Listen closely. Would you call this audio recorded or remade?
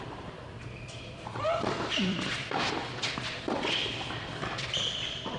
remade